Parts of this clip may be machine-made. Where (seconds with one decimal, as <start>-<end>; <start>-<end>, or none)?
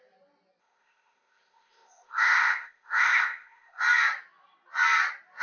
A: 0.6-3.8